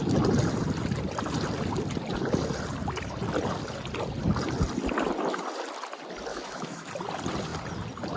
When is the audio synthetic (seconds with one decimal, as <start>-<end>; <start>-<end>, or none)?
6.3-6.9